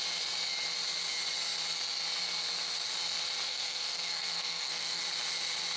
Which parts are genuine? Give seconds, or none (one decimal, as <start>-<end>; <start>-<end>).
0.0-3.5; 5.0-5.8